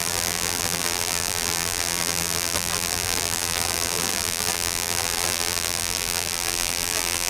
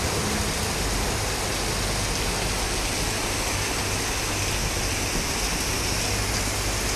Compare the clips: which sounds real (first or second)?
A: second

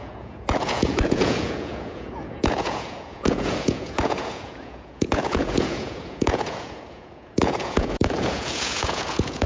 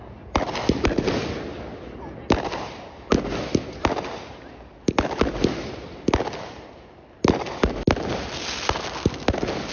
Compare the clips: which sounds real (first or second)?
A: second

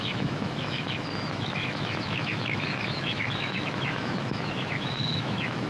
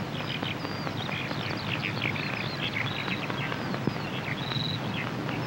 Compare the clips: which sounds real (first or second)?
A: second